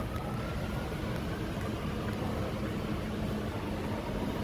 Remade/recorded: recorded